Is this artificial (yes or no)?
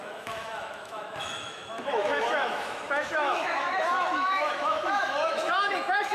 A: yes